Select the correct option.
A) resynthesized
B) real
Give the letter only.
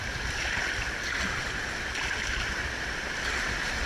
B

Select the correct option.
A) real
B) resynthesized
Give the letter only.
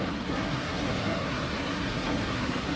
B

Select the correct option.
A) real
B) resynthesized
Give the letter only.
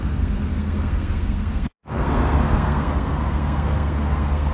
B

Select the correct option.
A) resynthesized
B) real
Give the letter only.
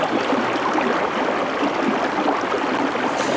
B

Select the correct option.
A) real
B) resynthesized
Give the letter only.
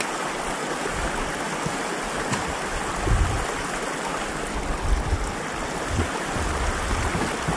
A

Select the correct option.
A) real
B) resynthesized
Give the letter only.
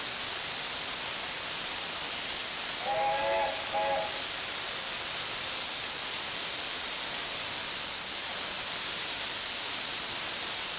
A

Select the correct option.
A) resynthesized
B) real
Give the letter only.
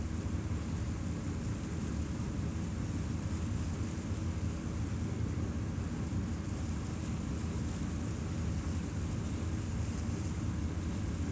B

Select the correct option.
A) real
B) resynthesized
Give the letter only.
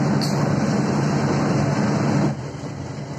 A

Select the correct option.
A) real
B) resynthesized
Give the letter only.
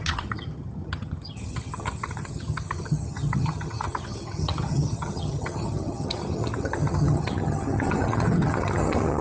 B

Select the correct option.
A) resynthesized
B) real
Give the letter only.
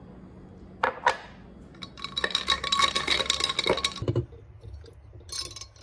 B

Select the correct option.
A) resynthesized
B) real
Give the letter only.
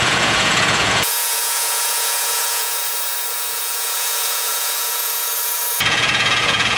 A